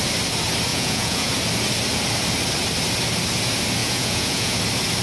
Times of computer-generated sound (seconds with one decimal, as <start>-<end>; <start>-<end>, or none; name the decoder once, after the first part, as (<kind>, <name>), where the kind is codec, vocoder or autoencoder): 0.7-1.3 (vocoder, Vocos); 3.8-4.6